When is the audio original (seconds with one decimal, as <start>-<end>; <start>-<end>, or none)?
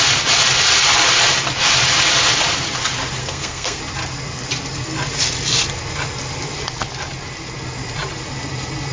0.0-3.2; 3.8-8.9